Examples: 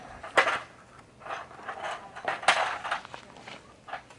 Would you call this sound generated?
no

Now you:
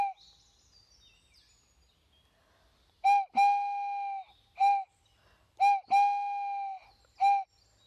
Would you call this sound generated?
no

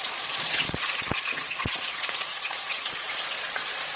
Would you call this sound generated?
yes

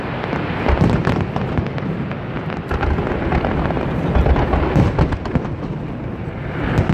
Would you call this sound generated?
no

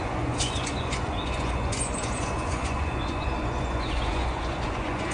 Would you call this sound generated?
yes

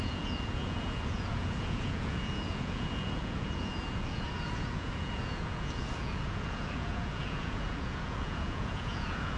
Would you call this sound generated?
yes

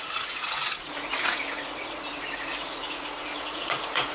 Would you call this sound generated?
yes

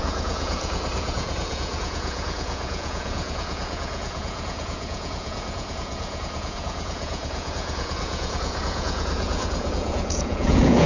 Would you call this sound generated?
yes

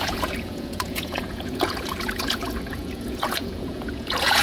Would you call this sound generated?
yes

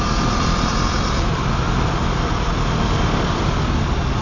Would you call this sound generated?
no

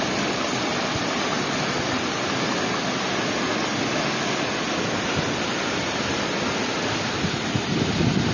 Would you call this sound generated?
no